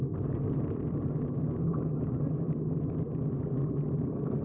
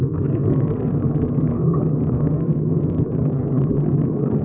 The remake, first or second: second